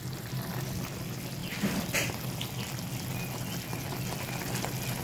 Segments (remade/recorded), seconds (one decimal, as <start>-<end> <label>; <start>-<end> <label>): 0.0-5.0 recorded